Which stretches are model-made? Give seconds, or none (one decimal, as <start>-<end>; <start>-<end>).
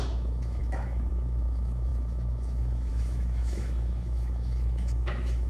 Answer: 0.0-5.5